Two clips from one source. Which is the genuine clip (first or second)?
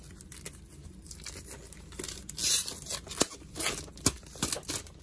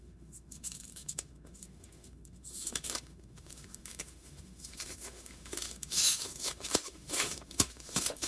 first